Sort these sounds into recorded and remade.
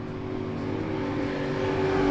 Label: recorded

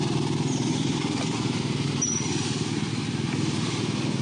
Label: recorded